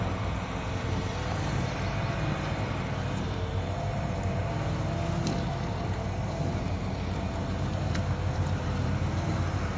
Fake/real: fake